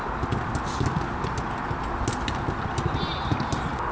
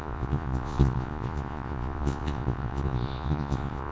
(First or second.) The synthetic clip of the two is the second